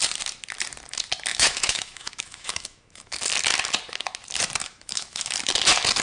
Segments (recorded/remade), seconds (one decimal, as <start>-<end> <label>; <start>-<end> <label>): 0.0-1.3 recorded; 1.3-3.2 remade; 3.2-4.6 recorded; 4.6-5.3 remade; 5.3-6.0 recorded